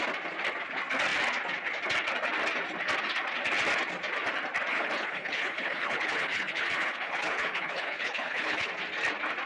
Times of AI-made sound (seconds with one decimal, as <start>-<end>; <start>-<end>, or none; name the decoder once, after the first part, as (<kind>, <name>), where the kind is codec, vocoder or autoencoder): 4.7-8.7 (codec, HILCodec)